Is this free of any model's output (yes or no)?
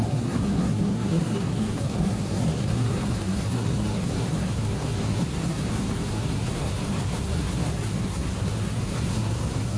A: no